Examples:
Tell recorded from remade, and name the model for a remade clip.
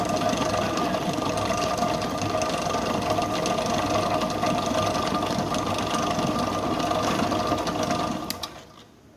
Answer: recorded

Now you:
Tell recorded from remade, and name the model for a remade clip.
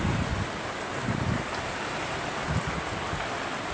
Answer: recorded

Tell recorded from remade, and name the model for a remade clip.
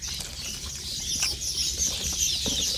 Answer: recorded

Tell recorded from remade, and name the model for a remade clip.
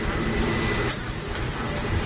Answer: recorded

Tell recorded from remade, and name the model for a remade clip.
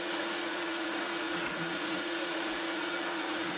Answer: remade, vocoder, Vocos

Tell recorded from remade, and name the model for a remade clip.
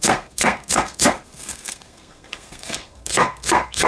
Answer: remade, codec, SNAC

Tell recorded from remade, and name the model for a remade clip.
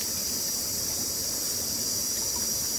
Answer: remade, vocoder, BigVGAN v2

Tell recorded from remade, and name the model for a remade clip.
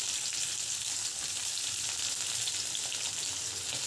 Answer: recorded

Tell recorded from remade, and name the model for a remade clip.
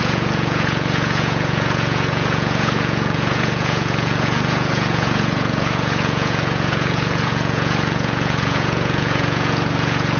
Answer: remade, vocoder, Vocos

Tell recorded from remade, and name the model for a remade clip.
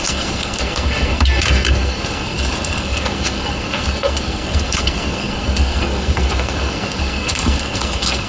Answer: remade, codec, SNAC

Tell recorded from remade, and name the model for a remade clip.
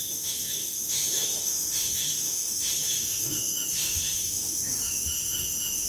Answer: remade, autoencoder, DAC-VAE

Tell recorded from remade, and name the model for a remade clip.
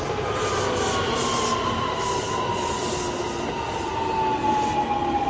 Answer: recorded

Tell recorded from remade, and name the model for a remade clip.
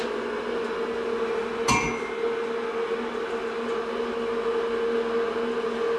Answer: recorded